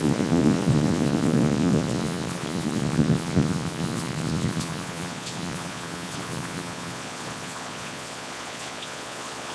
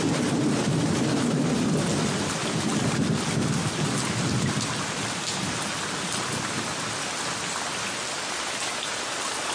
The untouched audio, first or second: second